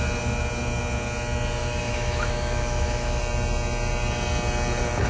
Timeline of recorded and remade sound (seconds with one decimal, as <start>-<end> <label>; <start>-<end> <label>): 0.0-1.6 recorded; 1.6-3.2 remade; 3.2-5.1 recorded